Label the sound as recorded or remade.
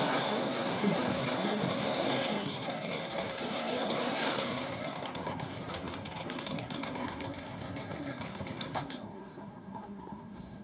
remade